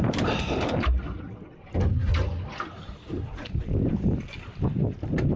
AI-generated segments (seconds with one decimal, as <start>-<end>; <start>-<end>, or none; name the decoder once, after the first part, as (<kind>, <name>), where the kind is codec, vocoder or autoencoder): none